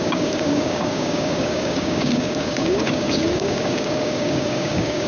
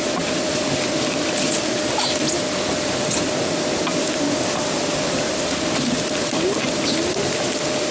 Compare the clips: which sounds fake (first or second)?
first